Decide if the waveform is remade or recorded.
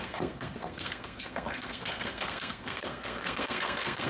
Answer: remade